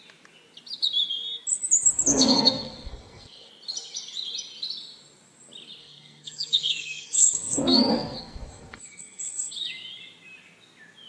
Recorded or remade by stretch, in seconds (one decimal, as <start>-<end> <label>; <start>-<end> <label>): 0.0-2.1 recorded; 2.1-3.5 remade; 3.5-5.8 recorded; 5.8-9.5 remade; 9.5-11.1 recorded